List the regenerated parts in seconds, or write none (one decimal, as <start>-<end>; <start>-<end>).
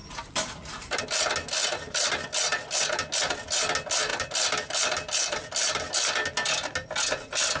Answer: 0.0-1.0; 1.6-2.1; 4.1-5.9